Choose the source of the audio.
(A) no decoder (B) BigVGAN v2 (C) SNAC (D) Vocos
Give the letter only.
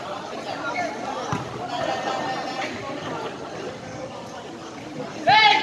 A